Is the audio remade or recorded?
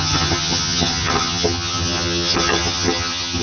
remade